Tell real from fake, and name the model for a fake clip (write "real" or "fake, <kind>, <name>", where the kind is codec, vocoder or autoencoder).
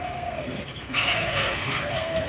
fake, codec, SNAC